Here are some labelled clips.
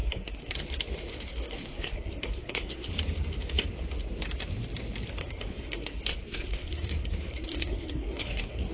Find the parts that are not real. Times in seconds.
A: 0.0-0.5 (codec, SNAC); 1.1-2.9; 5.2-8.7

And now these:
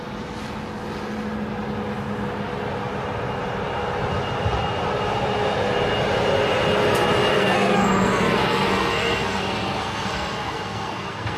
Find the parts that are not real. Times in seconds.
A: 7.3-11.4 (codec, SNAC)

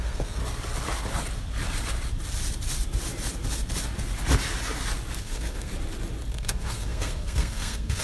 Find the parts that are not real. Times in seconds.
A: 0.0-0.4 (codec, SNAC); 5.2-5.7; 6.3-8.0

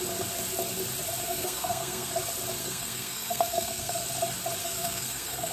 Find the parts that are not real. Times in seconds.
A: 1.2-2.1 (codec, SNAC); 2.6-4.0; 4.6-5.5

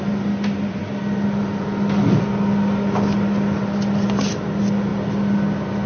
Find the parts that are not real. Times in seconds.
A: none

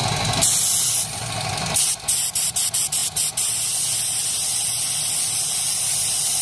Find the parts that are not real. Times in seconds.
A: none